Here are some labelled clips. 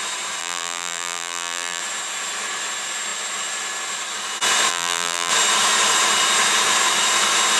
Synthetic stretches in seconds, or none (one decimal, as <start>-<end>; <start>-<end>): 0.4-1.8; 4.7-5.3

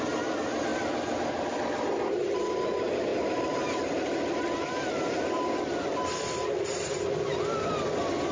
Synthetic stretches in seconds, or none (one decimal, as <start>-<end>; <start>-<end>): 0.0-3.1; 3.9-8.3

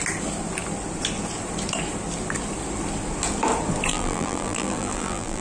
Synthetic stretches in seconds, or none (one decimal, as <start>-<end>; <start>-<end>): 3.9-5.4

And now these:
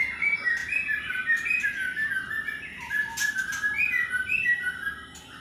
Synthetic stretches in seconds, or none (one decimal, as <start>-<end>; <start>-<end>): 0.6-2.1

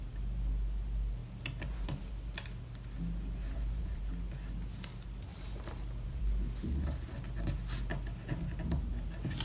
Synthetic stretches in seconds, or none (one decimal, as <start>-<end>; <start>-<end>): 3.4-4.0; 5.3-6.2

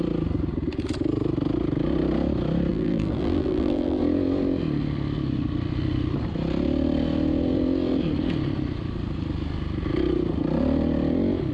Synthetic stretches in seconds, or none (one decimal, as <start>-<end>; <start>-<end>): 2.7-4.0